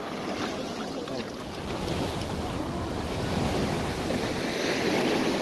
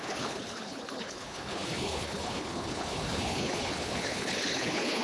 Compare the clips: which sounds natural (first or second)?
first